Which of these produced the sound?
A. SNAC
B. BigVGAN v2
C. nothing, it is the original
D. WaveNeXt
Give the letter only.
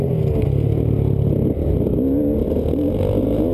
C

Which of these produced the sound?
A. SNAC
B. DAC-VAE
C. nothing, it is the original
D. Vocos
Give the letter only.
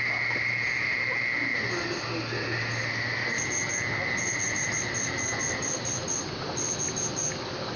C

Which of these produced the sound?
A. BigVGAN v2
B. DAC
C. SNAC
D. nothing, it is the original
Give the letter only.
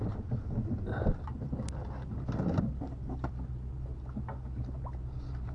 D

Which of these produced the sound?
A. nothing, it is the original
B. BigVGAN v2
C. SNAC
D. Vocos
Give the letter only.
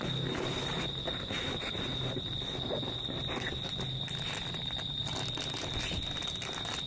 A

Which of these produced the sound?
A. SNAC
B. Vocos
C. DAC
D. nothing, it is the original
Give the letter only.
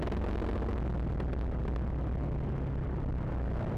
D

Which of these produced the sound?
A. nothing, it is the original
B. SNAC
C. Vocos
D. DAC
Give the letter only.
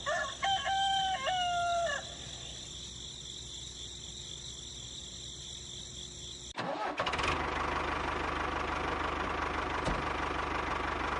A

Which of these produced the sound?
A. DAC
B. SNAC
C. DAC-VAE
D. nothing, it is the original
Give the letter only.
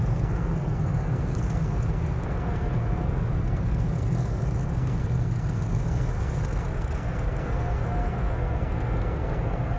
B